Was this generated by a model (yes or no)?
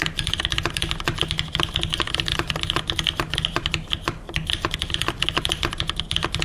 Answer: no